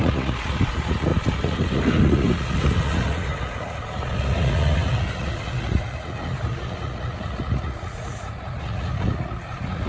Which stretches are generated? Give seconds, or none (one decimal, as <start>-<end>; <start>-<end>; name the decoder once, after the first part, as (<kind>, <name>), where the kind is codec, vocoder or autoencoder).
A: 0.0-9.9 (vocoder, Vocos)